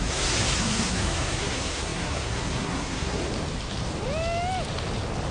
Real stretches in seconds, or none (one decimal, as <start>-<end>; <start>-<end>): 3.2-5.3